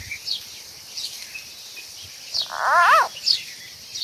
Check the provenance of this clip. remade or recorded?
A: remade